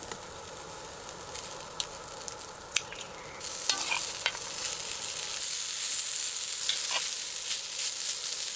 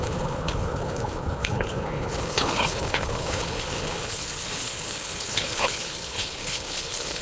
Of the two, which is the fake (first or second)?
second